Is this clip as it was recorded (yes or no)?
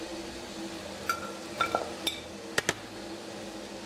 yes